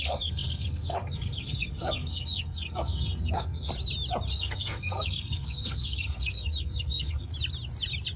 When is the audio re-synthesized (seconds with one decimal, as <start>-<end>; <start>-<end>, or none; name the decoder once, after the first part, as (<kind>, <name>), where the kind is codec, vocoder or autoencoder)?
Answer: 0.0-3.7 (codec, SNAC); 4.3-7.3